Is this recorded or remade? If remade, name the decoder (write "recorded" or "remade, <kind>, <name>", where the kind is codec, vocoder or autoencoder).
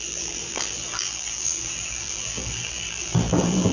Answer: remade, vocoder, BigVGAN v2